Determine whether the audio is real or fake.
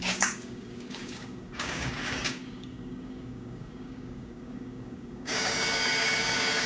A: fake